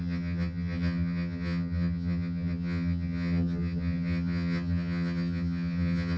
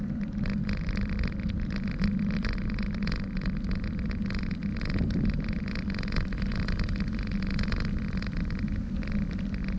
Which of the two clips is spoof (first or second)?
first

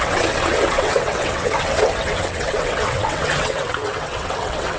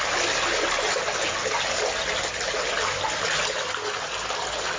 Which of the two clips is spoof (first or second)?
first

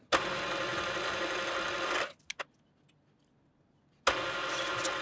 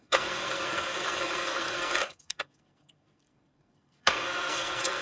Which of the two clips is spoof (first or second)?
second